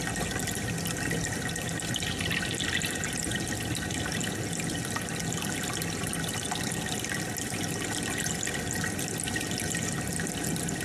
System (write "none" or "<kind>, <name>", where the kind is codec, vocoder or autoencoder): none